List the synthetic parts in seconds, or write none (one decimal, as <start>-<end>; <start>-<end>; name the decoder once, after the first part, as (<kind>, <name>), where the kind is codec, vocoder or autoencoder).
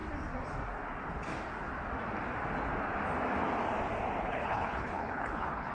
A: 4.2-5.7 (codec, HILCodec)